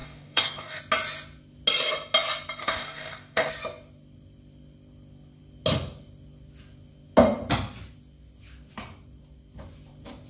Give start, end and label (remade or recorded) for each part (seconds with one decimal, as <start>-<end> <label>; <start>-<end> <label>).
0.0-0.8 remade; 0.8-2.6 recorded; 2.6-3.5 remade; 3.5-10.3 recorded